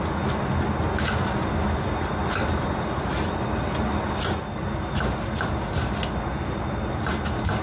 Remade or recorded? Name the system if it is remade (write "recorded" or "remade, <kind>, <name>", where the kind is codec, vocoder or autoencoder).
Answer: recorded